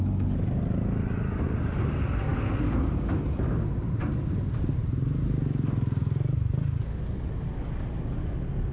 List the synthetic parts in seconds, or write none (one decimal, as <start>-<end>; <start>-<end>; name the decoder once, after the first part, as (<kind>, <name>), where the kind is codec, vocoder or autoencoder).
none